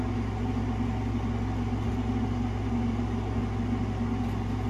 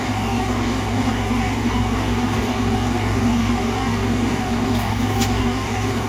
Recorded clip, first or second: first